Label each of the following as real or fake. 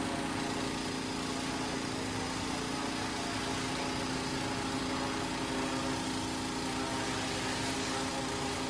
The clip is real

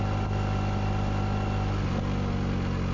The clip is real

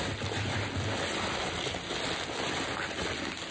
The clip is real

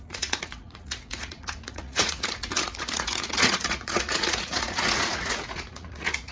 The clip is fake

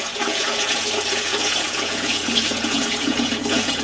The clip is fake